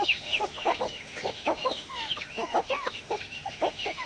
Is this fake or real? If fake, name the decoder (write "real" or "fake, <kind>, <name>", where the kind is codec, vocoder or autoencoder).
fake, autoencoder, DAC-VAE